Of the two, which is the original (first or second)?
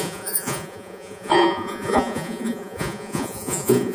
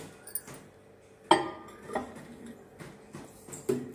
second